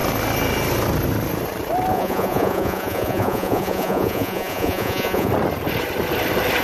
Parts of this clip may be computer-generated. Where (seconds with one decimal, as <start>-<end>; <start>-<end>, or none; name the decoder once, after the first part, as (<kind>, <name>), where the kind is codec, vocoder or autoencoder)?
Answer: 1.9-5.3 (vocoder, Vocos)